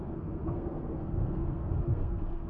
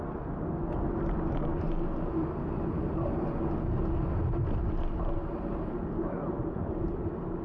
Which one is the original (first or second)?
second